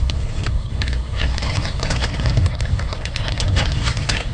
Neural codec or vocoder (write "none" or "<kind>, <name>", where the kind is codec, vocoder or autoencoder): codec, SNAC